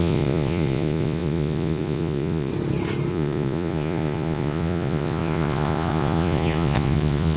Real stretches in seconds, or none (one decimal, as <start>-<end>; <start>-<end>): 2.5-3.1

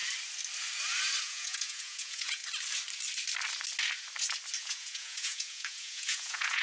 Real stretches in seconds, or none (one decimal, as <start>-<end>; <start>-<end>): 0.0-1.2; 2.4-4.6

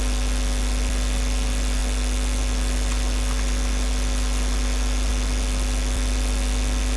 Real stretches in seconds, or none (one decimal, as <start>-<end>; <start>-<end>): 0.0-7.0

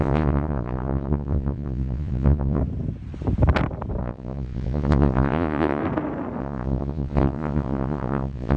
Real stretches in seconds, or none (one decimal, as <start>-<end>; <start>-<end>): 2.6-4.0; 5.8-6.4

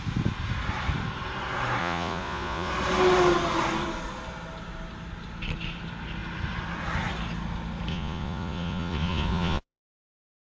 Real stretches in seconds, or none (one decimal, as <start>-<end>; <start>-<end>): 0.0-1.8; 2.7-7.9; 9.8-10.5

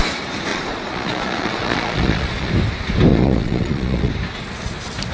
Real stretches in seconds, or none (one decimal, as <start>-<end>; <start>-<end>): 0.0-0.5; 2.5-3.1; 4.1-5.1